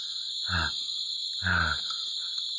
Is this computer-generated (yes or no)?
no